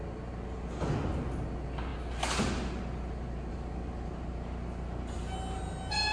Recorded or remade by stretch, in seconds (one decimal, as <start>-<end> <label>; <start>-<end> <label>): 0.0-6.1 recorded